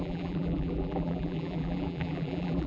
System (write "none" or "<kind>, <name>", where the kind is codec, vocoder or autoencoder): vocoder, BigVGAN v2